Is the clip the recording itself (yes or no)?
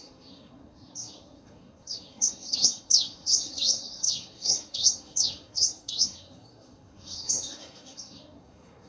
no